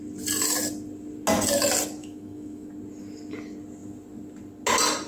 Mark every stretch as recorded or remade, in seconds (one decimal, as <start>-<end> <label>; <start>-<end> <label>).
0.0-2.0 recorded; 2.0-2.7 remade; 2.7-5.1 recorded